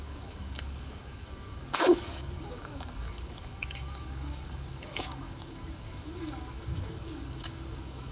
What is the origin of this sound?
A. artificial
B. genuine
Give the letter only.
A